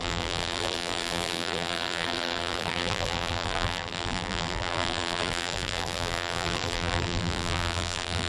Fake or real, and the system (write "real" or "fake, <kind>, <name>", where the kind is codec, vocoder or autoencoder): fake, vocoder, BigVGAN v2